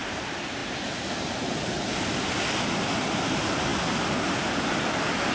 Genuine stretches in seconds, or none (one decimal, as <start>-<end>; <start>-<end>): 0.0-5.3